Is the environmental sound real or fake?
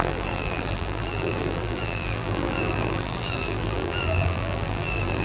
fake